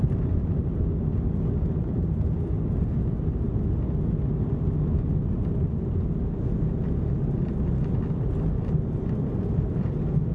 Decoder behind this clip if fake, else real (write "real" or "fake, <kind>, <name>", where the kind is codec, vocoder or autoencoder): real